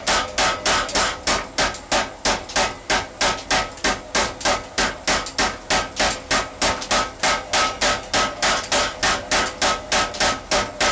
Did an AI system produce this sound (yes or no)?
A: no